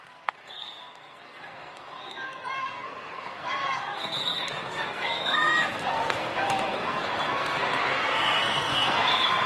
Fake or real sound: fake